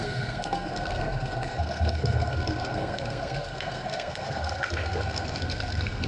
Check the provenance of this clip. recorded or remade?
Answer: remade